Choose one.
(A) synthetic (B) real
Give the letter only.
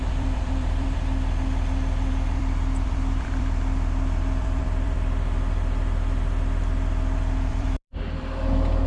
A